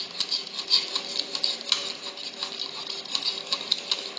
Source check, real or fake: real